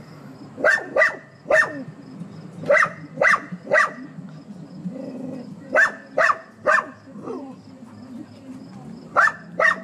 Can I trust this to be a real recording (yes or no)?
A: yes